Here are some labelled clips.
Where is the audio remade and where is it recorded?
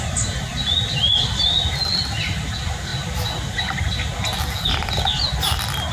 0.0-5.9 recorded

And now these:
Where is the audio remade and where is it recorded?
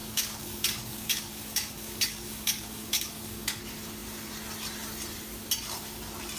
0.0-3.6 remade; 3.6-6.4 recorded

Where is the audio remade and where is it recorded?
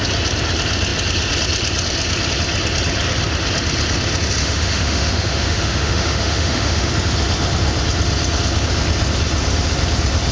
0.0-4.4 recorded; 4.4-6.9 remade; 6.9-10.3 recorded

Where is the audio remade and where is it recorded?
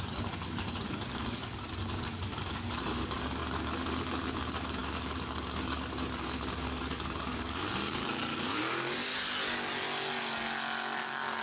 0.0-9.1 remade; 9.1-11.0 recorded; 11.0-11.4 remade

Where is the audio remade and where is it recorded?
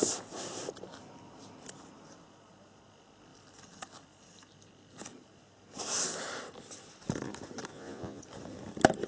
0.0-7.7 recorded; 7.7-8.2 remade; 8.2-9.1 recorded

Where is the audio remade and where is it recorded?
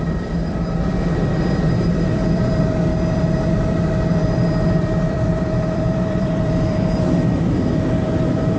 0.0-2.9 remade; 2.9-3.5 recorded; 3.5-8.6 remade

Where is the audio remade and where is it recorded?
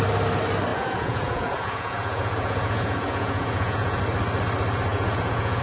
0.0-0.7 recorded; 0.7-4.0 remade; 4.0-4.9 recorded; 4.9-5.6 remade